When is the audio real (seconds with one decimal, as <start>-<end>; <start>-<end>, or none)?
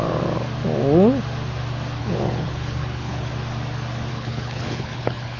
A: 0.0-2.0; 3.3-4.1